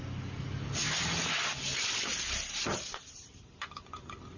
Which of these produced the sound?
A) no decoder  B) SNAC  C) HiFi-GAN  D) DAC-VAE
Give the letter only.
A